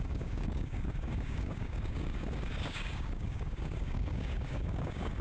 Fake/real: fake